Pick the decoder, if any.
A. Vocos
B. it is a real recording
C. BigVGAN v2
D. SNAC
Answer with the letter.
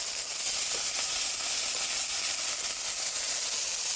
B